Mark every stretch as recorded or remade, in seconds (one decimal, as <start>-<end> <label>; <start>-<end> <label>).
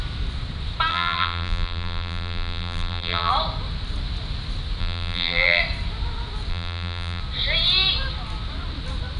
0.0-0.9 recorded; 0.9-3.3 remade; 3.3-4.8 recorded; 4.8-5.6 remade; 5.6-6.5 recorded; 6.5-7.2 remade; 7.2-9.2 recorded